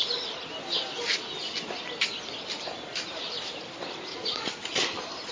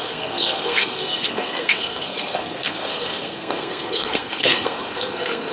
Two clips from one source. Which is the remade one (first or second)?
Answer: second